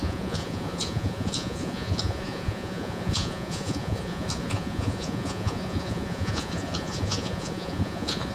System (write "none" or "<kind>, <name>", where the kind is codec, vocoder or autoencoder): vocoder, Vocos